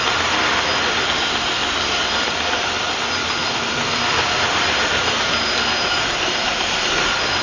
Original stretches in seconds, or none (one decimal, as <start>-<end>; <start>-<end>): 0.0-1.6; 2.6-3.2